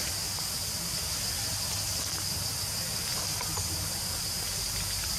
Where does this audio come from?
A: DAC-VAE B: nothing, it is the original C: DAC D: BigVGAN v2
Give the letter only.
B